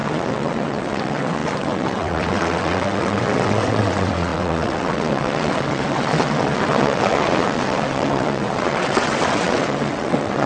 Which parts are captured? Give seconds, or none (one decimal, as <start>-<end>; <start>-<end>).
none